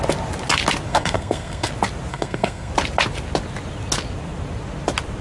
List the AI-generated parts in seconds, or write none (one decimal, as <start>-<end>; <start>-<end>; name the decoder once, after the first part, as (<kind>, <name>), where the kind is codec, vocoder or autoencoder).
0.9-1.7 (codec, SNAC); 2.1-2.7